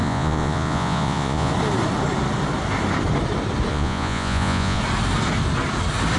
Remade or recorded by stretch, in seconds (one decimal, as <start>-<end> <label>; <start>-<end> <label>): 0.0-1.5 remade; 1.5-3.7 recorded; 3.7-4.8 remade; 4.8-6.2 recorded